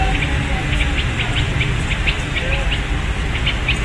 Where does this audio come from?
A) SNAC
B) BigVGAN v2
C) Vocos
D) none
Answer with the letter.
D